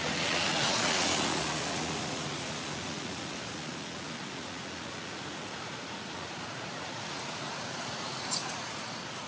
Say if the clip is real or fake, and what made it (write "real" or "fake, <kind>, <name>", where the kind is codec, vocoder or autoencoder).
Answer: fake, vocoder, Vocos